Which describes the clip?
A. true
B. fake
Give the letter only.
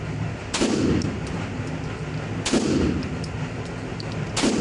A